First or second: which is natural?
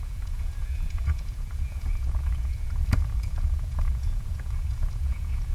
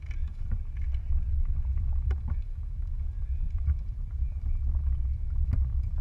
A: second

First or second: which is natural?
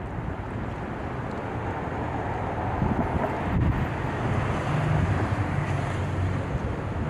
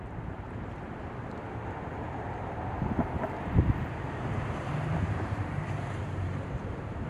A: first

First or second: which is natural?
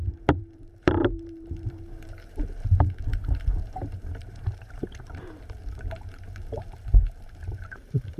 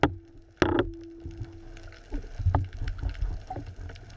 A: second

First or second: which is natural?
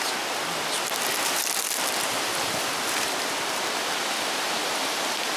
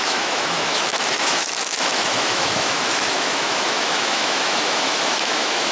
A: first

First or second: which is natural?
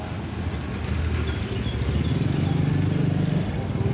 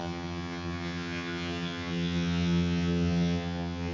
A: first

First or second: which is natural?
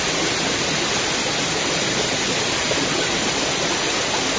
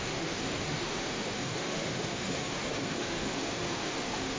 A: first